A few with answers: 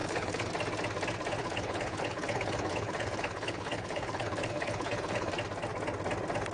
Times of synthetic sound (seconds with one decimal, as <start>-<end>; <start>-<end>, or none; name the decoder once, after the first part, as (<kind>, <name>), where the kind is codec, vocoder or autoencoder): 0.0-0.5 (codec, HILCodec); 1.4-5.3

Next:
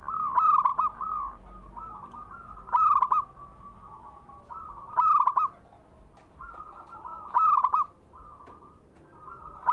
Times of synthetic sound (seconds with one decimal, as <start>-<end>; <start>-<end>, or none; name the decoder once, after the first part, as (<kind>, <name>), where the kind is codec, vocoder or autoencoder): 3.5-4.4 (autoencoder, DAC-VAE)

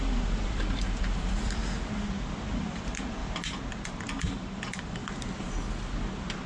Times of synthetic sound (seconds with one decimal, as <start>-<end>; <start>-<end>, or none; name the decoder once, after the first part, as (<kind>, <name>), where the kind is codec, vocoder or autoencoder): 0.0-1.6 (vocoder, BigVGAN v2); 2.5-3.2; 4.1-5.0